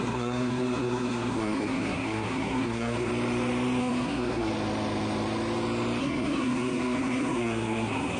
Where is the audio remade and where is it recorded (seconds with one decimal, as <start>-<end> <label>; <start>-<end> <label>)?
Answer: 0.0-3.1 remade; 3.1-3.8 recorded; 3.8-4.5 remade; 4.5-6.0 recorded; 6.0-8.2 remade